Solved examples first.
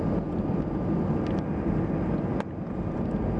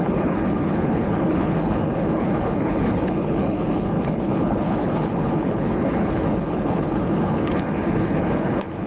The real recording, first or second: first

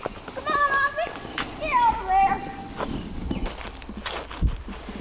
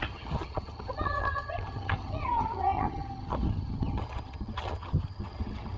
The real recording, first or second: first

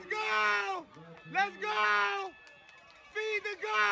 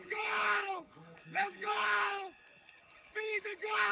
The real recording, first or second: first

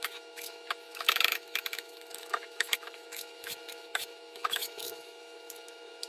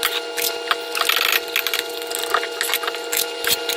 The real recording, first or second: second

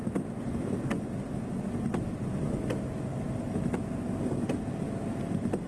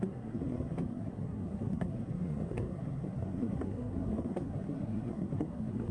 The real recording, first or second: first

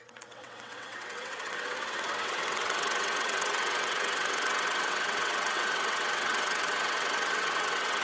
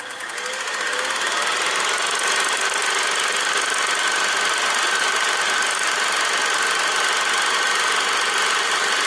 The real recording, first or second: second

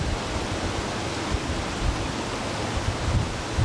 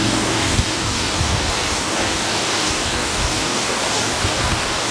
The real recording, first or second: first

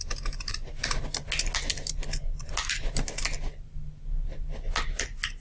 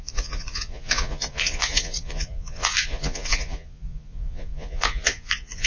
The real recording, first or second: first